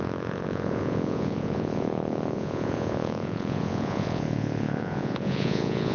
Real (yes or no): no